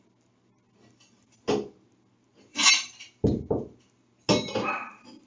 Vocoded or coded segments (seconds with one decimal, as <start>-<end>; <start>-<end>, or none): 2.5-3.8